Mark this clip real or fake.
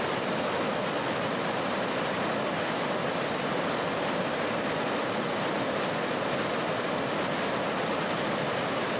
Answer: real